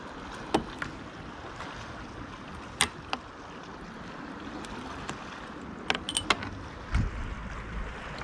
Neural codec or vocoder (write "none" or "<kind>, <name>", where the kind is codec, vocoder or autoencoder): none